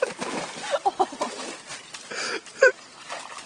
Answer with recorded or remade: recorded